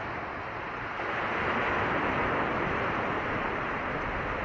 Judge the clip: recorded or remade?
recorded